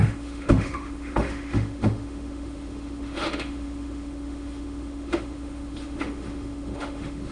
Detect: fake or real fake